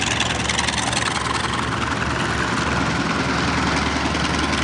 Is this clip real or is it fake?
real